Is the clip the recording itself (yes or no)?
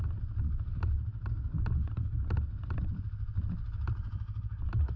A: yes